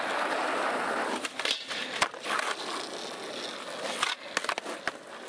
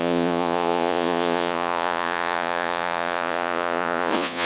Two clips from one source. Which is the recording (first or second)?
first